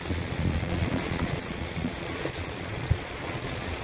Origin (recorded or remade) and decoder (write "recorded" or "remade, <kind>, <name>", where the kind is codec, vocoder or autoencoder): remade, vocoder, Vocos